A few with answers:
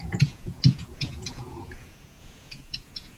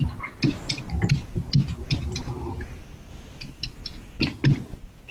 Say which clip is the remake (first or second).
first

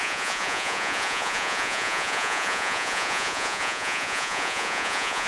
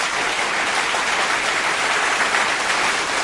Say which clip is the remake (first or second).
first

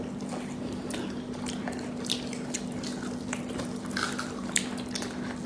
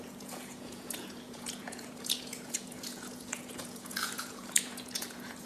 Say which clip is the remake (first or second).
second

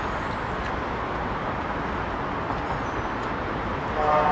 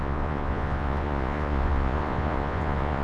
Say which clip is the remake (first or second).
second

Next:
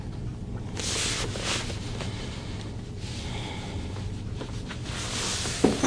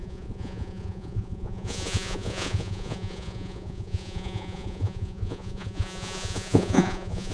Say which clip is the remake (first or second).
second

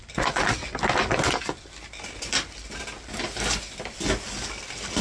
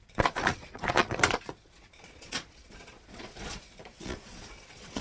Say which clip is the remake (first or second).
second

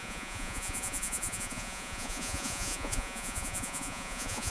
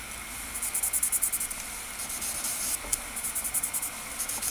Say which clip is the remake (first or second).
first